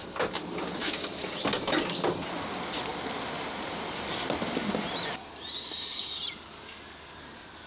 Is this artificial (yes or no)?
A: no